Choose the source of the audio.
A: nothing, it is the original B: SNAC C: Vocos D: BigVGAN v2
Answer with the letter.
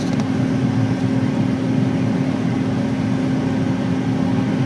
D